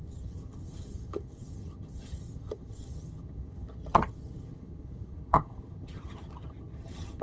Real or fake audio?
fake